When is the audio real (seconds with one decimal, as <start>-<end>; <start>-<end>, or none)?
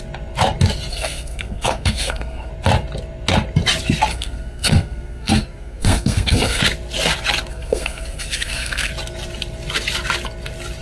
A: 0.0-0.9; 2.5-4.1; 6.6-7.5; 8.9-10.8